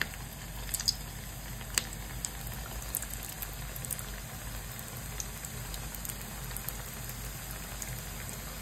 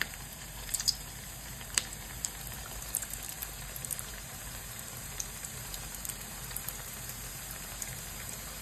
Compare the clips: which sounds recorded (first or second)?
first